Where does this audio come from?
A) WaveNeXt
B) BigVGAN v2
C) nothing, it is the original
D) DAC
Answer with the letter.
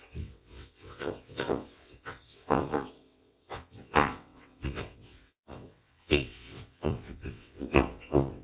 A